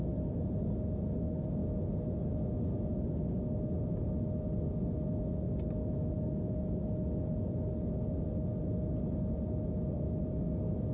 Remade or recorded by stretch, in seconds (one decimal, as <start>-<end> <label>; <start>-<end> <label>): 0.0-10.9 recorded